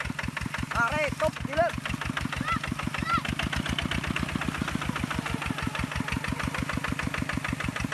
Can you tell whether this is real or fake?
real